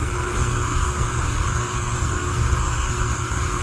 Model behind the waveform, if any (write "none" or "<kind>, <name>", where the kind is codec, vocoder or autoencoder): codec, SNAC